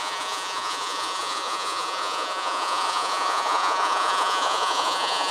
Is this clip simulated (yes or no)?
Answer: yes